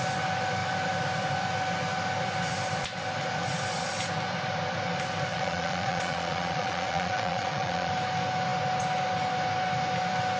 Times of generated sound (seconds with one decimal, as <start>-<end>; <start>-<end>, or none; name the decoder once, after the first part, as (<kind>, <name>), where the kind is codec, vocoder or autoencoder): 5.3-7.9 (vocoder, Vocos)